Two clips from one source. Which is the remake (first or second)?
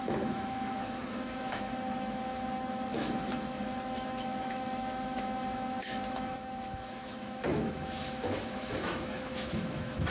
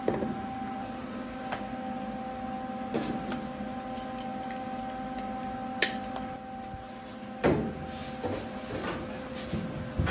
first